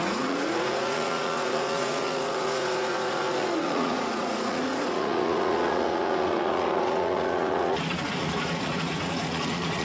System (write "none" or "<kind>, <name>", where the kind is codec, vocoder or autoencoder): vocoder, Vocos